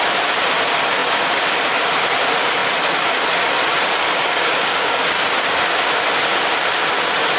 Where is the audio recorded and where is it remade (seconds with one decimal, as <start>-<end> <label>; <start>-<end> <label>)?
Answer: 0.0-4.0 recorded; 4.0-5.2 remade; 5.2-7.4 recorded